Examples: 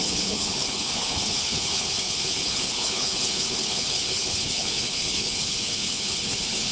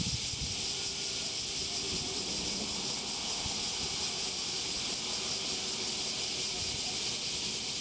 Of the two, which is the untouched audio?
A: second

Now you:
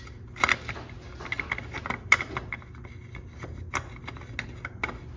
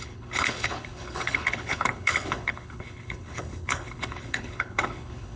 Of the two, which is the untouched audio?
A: first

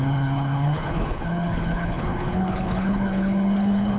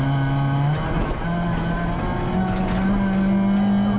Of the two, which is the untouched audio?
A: second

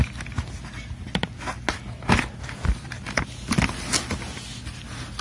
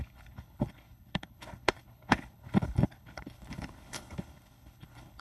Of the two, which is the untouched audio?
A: first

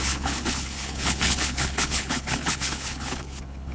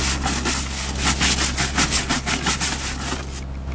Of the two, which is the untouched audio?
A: second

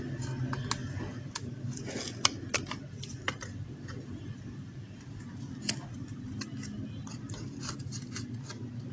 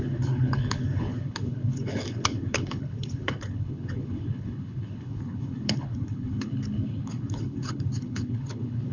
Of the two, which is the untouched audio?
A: first